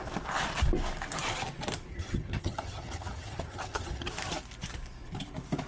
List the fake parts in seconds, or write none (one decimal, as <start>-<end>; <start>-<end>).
1.9-4.1